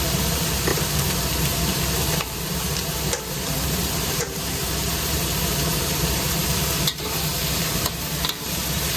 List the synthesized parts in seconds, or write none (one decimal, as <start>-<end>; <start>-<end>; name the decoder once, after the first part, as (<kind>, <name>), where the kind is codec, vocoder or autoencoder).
0.0-9.0 (vocoder, BigVGAN v2)